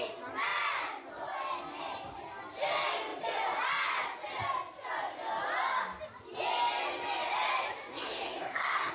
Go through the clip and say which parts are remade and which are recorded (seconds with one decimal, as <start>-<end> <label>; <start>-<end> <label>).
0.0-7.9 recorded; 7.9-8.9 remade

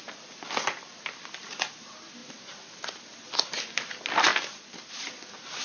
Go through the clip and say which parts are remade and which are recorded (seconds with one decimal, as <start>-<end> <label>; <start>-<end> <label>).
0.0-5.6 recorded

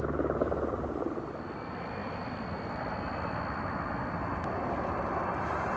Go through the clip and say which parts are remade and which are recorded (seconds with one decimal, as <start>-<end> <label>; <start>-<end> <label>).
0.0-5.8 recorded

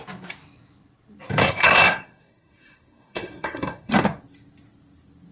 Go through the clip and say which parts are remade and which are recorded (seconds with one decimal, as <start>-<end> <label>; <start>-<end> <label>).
0.0-1.4 recorded; 1.4-3.9 remade; 3.9-5.3 recorded

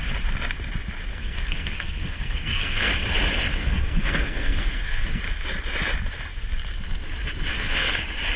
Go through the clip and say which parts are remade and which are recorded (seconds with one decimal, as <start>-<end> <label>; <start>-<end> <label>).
0.0-1.1 recorded; 1.1-2.9 remade; 2.9-3.5 recorded; 3.5-5.2 remade; 5.2-7.5 recorded; 7.5-8.0 remade; 8.0-8.4 recorded